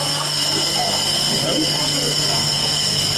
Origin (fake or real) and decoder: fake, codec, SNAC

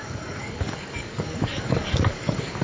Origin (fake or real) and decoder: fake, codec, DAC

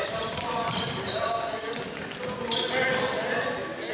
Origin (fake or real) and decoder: real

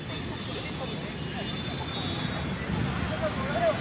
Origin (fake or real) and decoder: real